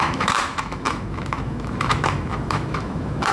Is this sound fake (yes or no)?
yes